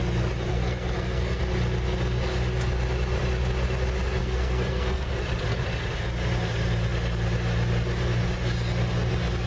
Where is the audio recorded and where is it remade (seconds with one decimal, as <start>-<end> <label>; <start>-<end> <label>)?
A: 0.0-0.5 recorded; 0.5-1.4 remade; 1.4-4.2 recorded; 4.2-5.1 remade; 5.1-9.5 recorded